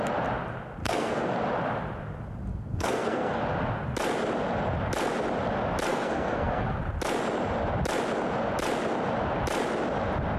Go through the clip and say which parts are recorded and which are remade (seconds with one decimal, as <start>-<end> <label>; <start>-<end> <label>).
0.0-0.8 recorded; 0.8-1.3 remade; 1.3-2.5 recorded; 2.5-3.4 remade; 3.4-5.9 recorded; 5.9-6.8 remade; 6.8-10.4 recorded